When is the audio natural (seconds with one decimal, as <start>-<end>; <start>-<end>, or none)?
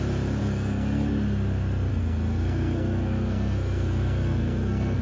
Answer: 0.0-0.4; 1.1-1.9